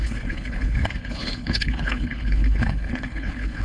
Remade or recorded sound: remade